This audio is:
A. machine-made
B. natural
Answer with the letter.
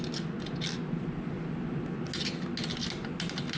B